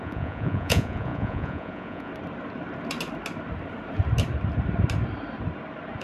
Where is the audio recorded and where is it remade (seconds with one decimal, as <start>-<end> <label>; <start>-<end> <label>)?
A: 0.0-2.1 remade; 2.1-6.0 recorded